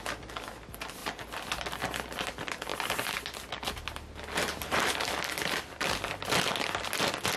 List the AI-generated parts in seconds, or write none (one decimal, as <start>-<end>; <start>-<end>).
none